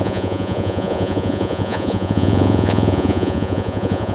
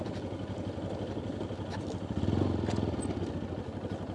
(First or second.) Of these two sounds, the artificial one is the first